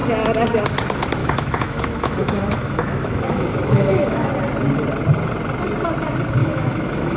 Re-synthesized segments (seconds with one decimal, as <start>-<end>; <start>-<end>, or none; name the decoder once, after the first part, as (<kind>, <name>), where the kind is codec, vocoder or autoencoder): 1.2-4.3 (autoencoder, DAC-VAE); 6.4-7.2